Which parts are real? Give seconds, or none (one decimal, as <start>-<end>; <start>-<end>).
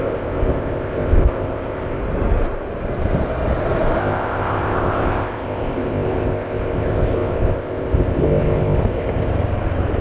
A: 2.0-4.0; 9.3-10.0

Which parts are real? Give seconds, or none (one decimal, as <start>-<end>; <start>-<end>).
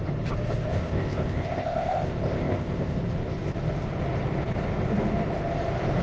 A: 0.0-0.7; 3.0-6.0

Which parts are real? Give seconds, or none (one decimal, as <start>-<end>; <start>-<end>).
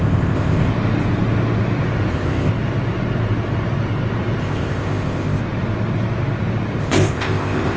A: 0.7-2.1; 2.5-4.4; 5.4-6.8